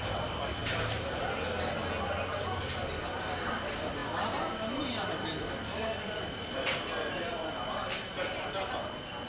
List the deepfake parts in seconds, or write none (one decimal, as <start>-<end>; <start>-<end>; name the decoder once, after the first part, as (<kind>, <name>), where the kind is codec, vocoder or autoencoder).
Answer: none